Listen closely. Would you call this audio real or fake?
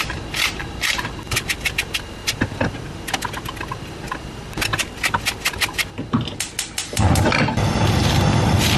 real